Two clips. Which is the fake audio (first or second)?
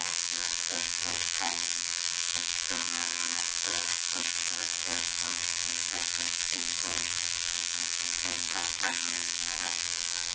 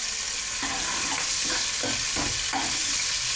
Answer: first